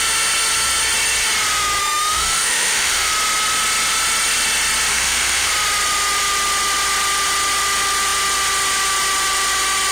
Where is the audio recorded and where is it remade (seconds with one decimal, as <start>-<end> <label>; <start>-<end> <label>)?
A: 0.0-1.8 recorded; 1.8-3.1 remade; 3.1-4.9 recorded; 4.9-5.5 remade; 5.5-9.9 recorded